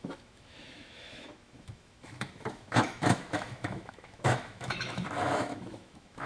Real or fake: fake